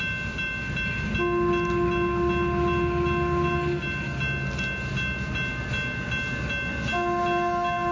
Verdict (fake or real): real